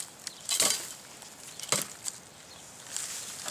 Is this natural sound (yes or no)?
yes